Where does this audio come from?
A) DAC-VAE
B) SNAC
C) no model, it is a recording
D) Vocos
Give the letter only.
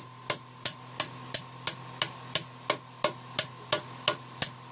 C